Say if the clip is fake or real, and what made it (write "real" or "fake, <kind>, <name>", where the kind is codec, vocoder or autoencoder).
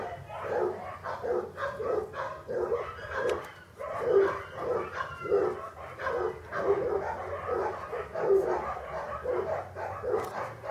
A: real